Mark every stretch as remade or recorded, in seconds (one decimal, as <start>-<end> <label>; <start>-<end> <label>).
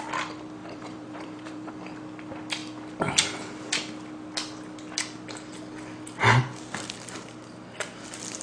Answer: 0.0-0.6 recorded; 0.6-1.7 remade; 1.7-8.4 recorded